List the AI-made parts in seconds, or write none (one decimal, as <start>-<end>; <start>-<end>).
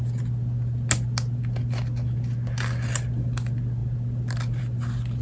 none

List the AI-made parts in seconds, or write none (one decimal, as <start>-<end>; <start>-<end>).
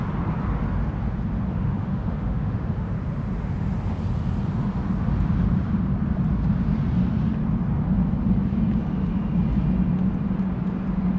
1.5-2.9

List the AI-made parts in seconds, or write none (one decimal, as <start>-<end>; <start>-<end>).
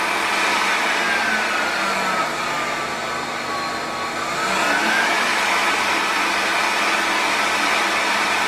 4.8-5.7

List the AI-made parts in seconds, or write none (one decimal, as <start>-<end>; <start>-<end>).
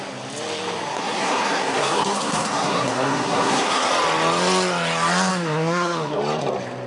0.9-3.9; 5.3-6.2